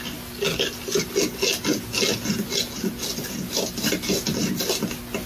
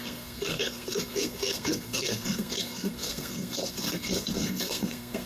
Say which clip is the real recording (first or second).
first